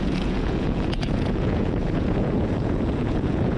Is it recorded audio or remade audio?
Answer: remade